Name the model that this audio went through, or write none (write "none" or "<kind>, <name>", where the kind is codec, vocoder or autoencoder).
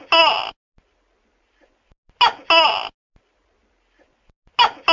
none